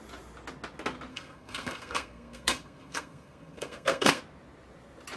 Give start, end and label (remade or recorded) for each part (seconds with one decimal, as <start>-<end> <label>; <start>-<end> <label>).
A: 0.0-1.1 recorded; 1.1-4.2 remade; 4.2-5.2 recorded